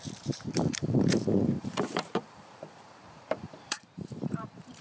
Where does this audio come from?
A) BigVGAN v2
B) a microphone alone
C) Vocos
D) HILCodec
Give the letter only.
A